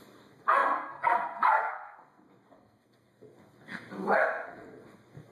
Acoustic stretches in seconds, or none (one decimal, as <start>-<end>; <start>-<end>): none